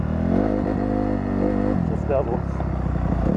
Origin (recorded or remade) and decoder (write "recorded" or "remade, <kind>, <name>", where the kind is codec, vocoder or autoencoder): recorded